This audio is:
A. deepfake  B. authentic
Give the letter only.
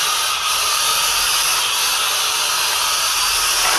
B